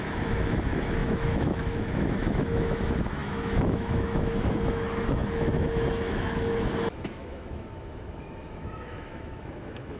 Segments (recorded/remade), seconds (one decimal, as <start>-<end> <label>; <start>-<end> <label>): 0.0-10.0 remade